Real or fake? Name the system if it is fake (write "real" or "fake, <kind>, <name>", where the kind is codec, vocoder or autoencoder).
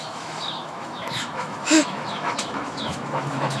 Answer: fake, autoencoder, DAC-VAE